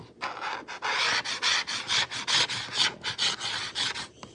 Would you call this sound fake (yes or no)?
no